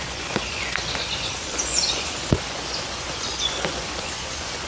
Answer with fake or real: fake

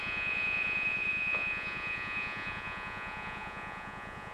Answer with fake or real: fake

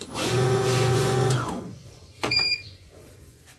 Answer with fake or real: fake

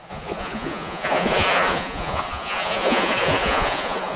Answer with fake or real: fake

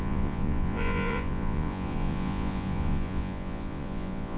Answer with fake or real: fake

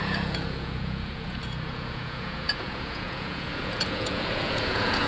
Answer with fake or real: fake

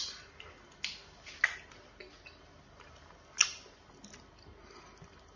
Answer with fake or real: real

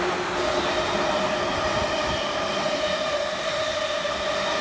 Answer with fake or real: real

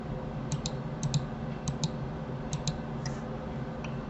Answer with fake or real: real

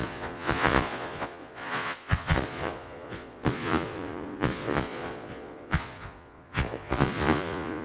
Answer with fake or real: fake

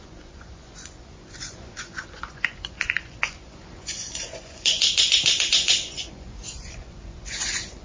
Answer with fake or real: fake